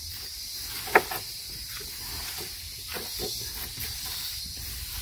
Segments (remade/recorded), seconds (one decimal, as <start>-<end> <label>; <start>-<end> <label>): 0.0-5.0 recorded